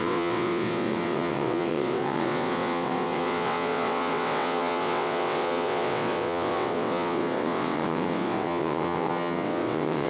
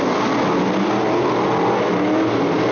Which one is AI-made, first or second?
first